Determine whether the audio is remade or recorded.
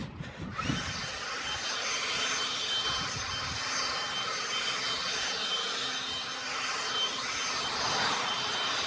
recorded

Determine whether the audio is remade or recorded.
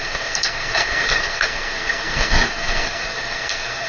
remade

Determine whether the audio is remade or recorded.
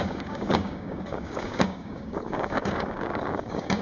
remade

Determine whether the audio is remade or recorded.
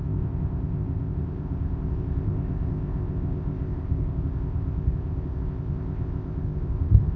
remade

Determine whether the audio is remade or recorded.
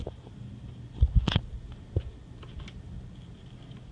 recorded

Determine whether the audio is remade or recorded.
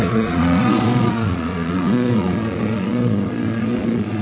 remade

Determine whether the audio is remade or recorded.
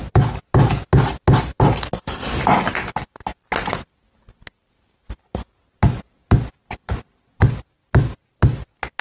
recorded